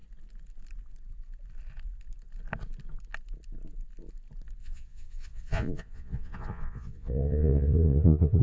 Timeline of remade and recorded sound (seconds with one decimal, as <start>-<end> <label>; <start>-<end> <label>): 0.0-4.6 recorded; 4.6-8.4 remade